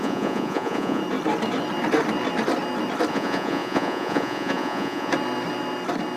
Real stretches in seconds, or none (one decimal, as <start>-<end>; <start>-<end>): 1.0-3.1; 5.1-6.2

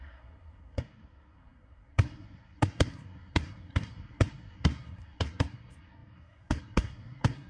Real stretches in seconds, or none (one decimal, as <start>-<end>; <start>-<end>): none

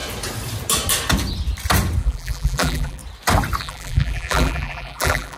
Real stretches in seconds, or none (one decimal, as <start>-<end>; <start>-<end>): 0.0-2.0; 3.0-3.6

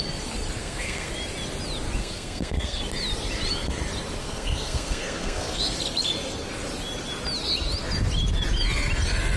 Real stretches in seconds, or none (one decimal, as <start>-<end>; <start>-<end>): 0.0-0.6; 1.1-2.0; 2.8-4.2; 5.6-9.4

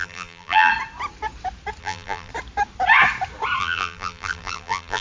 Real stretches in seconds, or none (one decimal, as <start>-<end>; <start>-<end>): 0.7-1.8; 2.3-3.6

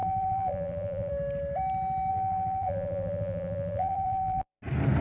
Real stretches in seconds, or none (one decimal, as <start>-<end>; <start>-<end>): 1.1-2.1; 4.6-5.0

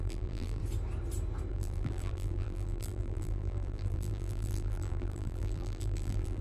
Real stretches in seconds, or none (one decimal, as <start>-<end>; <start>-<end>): 0.6-1.5